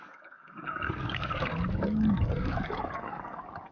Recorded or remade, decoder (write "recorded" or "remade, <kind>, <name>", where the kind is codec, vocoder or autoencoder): remade, codec, DAC